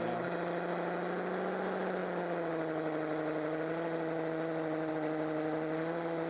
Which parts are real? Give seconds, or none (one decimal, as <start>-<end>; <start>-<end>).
0.0-6.3

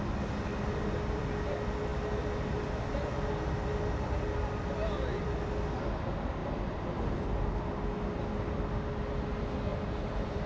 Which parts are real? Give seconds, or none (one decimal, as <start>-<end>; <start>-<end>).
0.0-6.4; 7.1-9.7

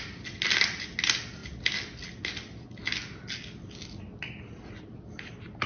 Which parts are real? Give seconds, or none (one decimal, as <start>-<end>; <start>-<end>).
0.0-5.7

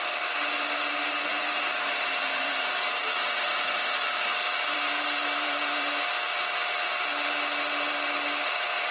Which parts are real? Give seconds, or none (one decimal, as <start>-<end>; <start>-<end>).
0.0-1.3; 6.1-8.9

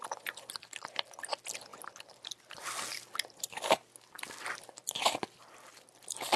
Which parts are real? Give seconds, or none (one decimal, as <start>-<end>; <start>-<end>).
0.0-6.4

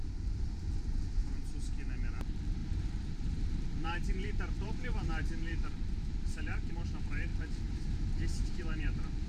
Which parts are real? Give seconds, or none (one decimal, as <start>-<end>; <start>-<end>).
1.2-2.2

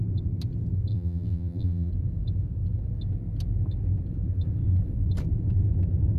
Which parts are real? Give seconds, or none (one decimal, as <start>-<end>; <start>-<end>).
0.0-0.9; 1.9-6.2